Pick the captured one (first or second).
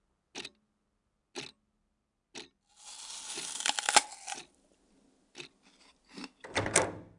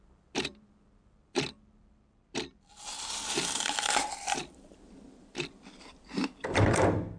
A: first